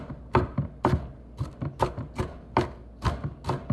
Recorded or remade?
recorded